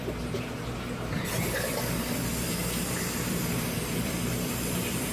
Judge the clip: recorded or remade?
remade